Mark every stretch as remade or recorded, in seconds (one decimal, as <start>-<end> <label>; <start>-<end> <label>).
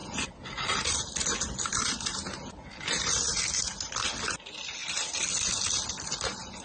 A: 0.0-6.6 recorded